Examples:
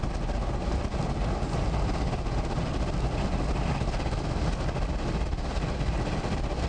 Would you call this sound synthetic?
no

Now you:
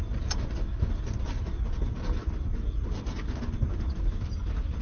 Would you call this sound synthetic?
no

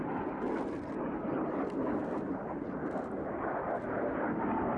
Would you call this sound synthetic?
no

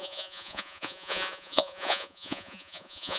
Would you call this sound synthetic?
yes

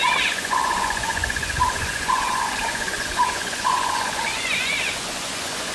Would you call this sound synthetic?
yes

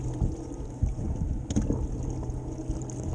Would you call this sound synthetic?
no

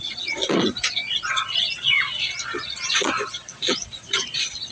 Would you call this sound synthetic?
yes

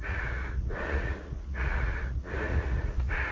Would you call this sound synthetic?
yes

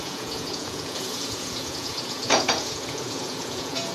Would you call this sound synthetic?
yes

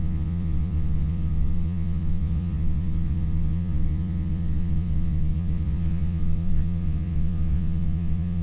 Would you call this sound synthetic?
yes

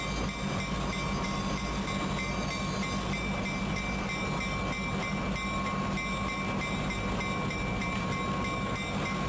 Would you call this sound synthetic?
no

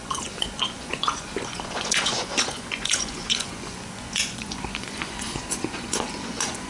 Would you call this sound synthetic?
yes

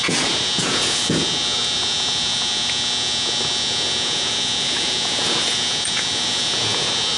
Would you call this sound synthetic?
yes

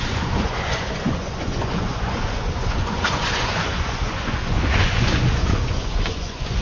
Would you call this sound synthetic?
yes